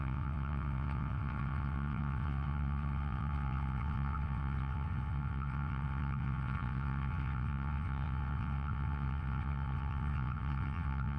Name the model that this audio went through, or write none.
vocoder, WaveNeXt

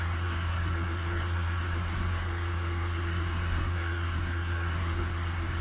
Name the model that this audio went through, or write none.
codec, SNAC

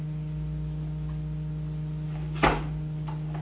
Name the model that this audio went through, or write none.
none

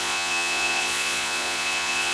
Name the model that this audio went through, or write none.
vocoder, Vocos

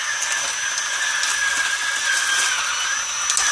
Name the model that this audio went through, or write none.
none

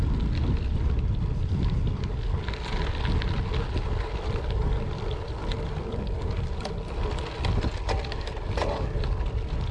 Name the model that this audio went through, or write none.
none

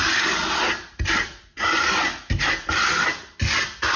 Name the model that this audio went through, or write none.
none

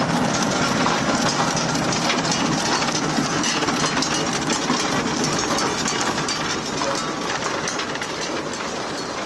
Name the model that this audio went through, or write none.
none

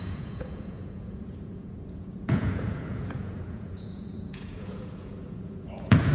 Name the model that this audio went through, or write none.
vocoder, Vocos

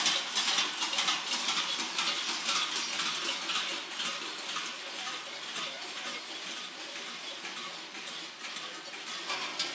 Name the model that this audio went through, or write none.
none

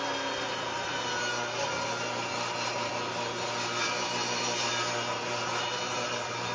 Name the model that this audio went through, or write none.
none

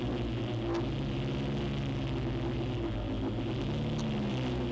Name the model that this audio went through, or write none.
none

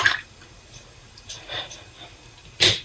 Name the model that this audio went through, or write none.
none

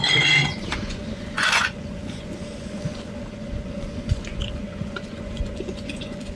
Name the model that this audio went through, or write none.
vocoder, Vocos